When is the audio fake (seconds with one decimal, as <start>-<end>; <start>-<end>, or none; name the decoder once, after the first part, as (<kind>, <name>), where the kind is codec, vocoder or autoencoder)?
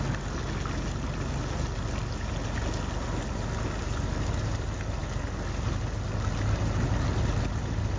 none